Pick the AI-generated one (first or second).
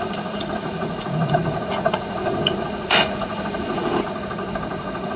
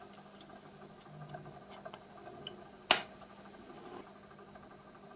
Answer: first